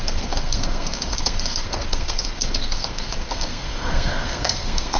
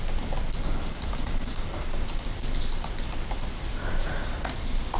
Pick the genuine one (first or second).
second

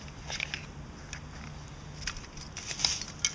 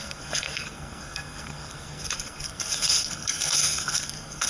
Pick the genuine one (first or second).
first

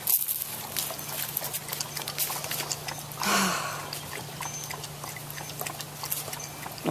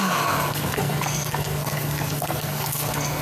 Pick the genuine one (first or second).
first